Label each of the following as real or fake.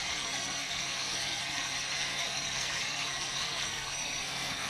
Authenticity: fake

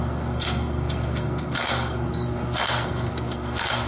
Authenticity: fake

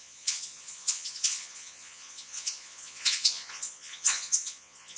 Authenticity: fake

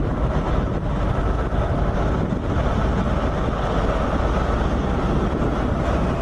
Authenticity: real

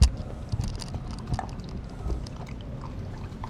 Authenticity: real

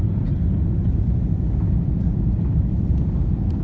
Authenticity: real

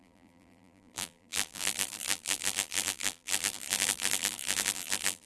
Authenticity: fake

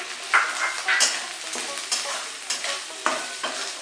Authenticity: real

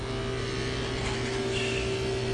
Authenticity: real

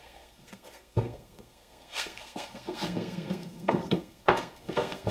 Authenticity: fake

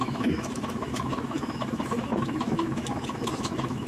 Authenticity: fake